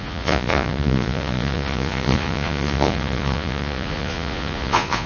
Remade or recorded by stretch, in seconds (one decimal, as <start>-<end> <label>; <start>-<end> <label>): 0.0-5.1 remade